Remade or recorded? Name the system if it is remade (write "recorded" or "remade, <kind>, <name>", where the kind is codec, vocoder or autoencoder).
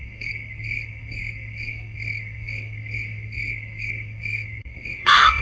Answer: remade, codec, SNAC